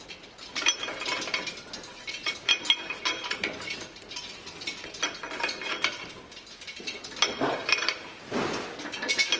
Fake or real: real